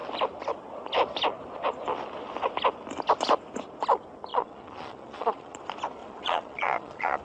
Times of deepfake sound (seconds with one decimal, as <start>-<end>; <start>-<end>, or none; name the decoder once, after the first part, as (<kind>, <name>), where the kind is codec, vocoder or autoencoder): 4.3-5.6 (vocoder, Vocos); 6.0-7.2